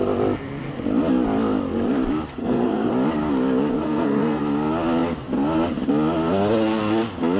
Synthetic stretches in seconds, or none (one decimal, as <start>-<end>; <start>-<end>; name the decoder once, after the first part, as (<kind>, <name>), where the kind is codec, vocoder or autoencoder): 2.4-2.9 (codec, SNAC); 3.8-4.4